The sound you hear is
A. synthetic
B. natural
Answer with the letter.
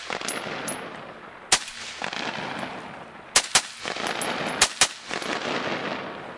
B